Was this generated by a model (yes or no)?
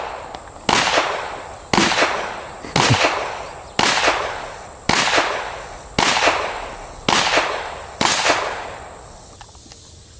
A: no